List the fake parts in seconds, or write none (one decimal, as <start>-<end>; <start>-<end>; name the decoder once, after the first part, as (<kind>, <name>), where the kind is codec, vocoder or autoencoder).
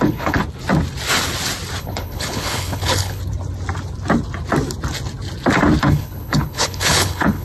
0.0-0.4 (codec, HILCodec); 1.8-3.2; 5.8-7.4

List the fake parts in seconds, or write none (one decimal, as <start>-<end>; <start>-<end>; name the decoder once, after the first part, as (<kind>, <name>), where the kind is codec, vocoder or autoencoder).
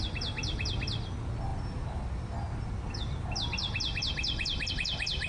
none